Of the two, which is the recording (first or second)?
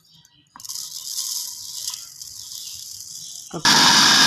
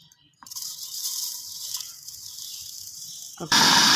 first